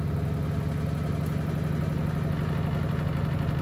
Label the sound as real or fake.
real